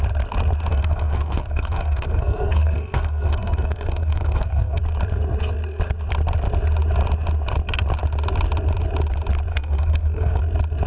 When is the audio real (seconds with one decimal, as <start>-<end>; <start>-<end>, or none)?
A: 0.0-0.7; 4.8-9.5; 10.4-10.9